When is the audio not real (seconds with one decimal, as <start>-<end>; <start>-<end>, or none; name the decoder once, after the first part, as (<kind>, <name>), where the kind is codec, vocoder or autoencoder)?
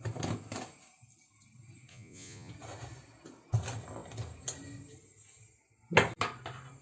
1.9-2.5 (vocoder, Vocos)